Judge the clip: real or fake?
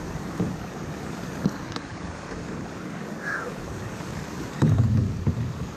fake